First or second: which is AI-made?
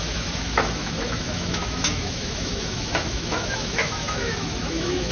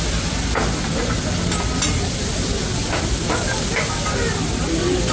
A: first